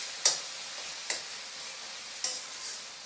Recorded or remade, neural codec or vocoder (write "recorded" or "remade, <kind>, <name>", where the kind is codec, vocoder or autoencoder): recorded